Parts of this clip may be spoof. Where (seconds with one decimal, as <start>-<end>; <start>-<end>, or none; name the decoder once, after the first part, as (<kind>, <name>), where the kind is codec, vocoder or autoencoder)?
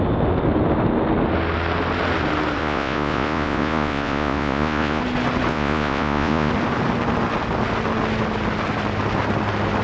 2.6-5.0 (vocoder, Vocos); 5.5-6.5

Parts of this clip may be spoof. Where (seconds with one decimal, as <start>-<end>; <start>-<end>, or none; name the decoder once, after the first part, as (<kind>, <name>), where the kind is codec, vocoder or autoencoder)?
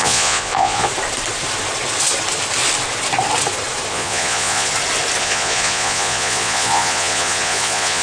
0.0-0.9 (vocoder, Vocos); 3.9-4.7; 5.2-8.0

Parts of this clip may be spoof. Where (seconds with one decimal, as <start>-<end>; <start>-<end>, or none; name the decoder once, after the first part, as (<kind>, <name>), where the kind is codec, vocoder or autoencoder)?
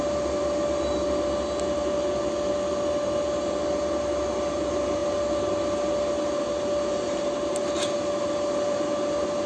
none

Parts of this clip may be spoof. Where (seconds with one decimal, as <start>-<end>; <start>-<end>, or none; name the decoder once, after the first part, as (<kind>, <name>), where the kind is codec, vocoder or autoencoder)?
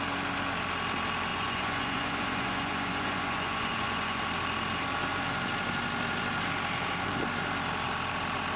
1.3-4.2 (vocoder, Vocos)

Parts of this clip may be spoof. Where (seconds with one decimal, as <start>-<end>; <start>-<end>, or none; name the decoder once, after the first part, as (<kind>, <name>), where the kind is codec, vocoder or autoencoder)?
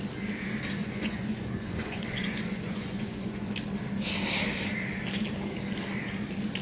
0.8-3.5 (vocoder, Vocos)